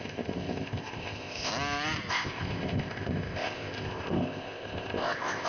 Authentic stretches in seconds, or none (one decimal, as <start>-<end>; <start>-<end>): 1.5-2.1